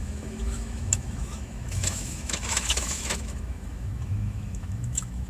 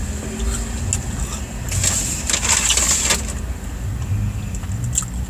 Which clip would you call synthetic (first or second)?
first